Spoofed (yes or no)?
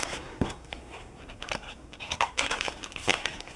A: yes